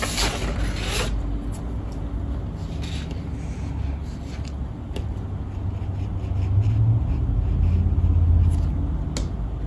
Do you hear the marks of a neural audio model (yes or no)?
no